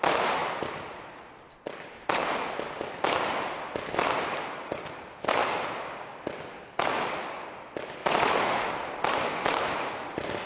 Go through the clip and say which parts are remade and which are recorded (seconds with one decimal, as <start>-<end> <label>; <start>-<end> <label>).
0.0-10.5 recorded